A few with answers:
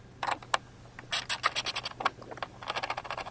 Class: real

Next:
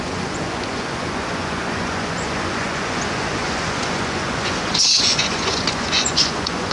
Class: fake